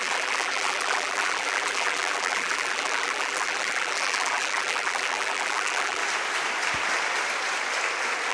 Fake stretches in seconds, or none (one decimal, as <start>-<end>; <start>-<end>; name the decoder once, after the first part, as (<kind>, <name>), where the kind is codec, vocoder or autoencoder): 0.0-6.0 (vocoder, BigVGAN v2)